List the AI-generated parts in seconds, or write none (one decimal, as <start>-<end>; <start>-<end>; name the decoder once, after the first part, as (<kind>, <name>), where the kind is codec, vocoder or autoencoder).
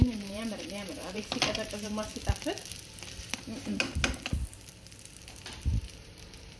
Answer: 0.0-2.1 (vocoder, BigVGAN v2); 6.0-6.6